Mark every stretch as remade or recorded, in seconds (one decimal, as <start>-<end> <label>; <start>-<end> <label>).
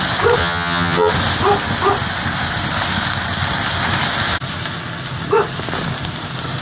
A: 0.0-0.4 recorded; 0.4-1.1 remade; 1.1-6.6 recorded